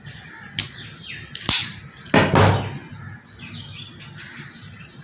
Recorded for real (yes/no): yes